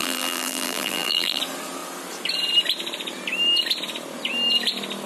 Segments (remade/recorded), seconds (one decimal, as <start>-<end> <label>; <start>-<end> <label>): 0.0-1.4 remade; 1.4-5.1 recorded